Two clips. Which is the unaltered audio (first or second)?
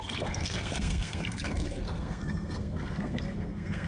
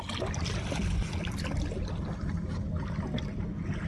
second